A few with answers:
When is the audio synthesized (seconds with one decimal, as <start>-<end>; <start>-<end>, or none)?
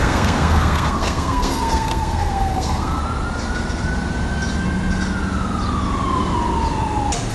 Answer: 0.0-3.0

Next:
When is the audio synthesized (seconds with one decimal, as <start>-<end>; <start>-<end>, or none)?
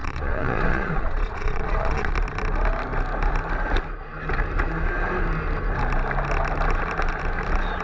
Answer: 0.0-2.1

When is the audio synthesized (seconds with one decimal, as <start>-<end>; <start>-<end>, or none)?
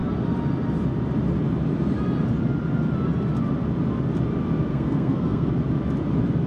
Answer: 4.7-5.5